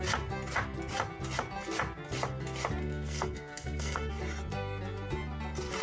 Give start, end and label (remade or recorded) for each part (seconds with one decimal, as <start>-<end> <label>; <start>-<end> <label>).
0.0-2.8 recorded; 2.8-4.1 remade; 4.1-5.8 recorded

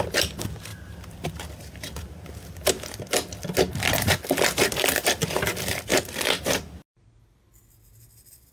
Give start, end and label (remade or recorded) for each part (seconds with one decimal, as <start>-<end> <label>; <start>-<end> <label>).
0.0-0.7 recorded; 0.7-2.7 remade; 2.7-8.5 recorded

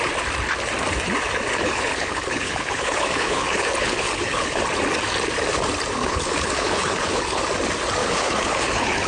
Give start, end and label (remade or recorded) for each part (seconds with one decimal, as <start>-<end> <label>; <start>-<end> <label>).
0.0-1.5 recorded; 1.5-4.6 remade; 4.6-6.0 recorded; 6.0-7.4 remade; 7.4-8.0 recorded; 8.0-9.1 remade

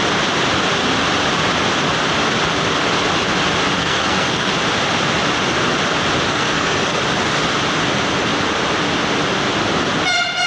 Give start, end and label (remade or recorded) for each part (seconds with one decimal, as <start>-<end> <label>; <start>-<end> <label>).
0.0-3.8 recorded; 3.8-4.5 remade; 4.5-6.3 recorded; 6.3-7.0 remade; 7.0-10.5 recorded